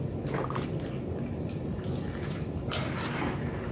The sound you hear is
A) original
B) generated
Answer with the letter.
A